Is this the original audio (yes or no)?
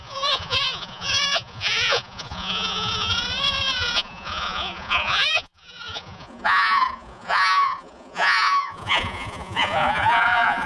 no